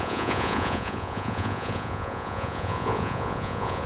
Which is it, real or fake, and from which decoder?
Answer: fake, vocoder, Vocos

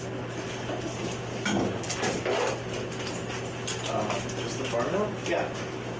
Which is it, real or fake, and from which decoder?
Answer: real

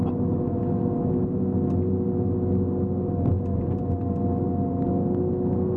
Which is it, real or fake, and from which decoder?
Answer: real